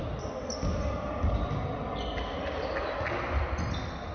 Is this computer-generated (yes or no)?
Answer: no